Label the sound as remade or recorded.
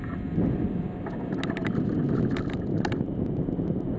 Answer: recorded